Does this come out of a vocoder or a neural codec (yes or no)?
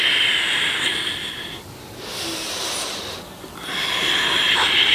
no